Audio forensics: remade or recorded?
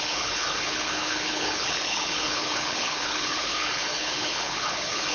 remade